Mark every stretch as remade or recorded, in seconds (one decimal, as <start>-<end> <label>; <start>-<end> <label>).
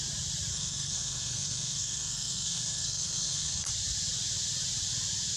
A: 0.0-0.5 recorded; 0.5-3.7 remade; 3.7-5.4 recorded